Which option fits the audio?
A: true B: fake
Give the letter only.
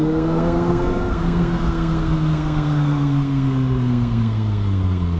B